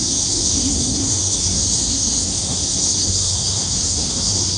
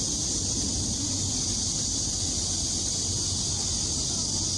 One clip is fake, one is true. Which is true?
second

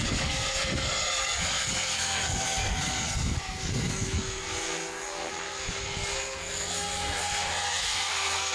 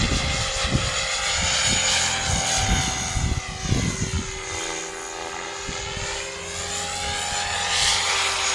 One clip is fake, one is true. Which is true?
second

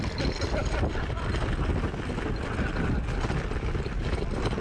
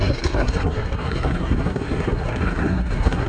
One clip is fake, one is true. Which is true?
first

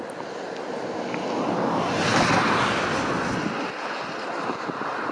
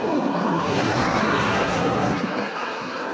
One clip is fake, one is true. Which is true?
first